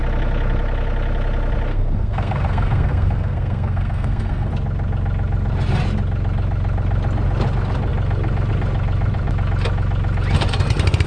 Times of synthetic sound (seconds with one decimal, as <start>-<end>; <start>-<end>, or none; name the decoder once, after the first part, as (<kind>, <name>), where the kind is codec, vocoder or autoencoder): 1.7-4.5 (codec, SNAC)